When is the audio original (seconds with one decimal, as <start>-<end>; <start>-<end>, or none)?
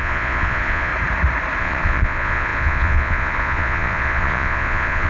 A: 0.9-1.6